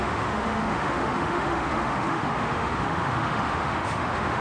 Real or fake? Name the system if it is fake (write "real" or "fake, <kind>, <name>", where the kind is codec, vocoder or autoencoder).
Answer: fake, autoencoder, DAC-VAE